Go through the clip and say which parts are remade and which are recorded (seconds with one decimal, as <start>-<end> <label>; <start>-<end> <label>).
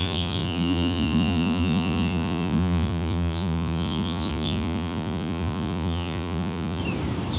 0.0-6.8 remade; 6.8-7.4 recorded